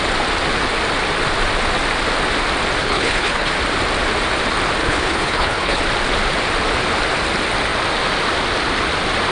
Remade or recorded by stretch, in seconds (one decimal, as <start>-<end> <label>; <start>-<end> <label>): 0.0-2.8 recorded; 2.8-3.5 remade; 3.5-4.8 recorded; 4.8-5.8 remade; 5.8-9.3 recorded

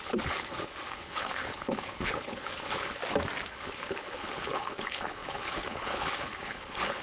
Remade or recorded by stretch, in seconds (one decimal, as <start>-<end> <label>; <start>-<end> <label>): 0.0-3.0 remade; 3.0-3.5 recorded; 3.5-7.0 remade

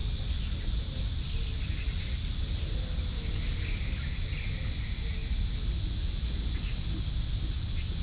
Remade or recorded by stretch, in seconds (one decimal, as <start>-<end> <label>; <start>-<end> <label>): 0.0-8.0 recorded